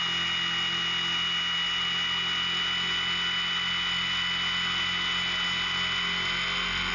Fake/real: real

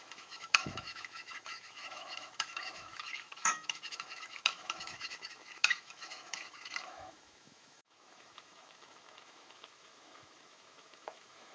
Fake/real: fake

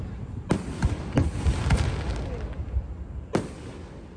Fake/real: real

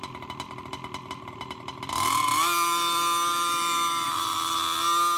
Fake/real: real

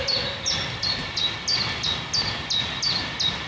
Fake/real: real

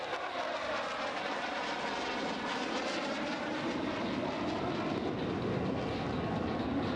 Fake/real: real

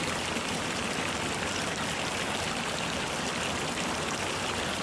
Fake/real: real